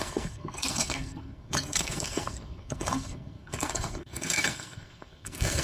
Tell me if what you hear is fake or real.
fake